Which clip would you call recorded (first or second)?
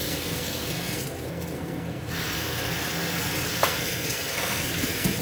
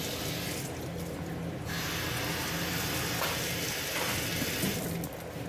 second